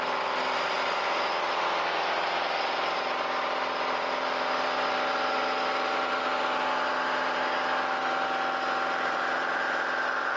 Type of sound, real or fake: real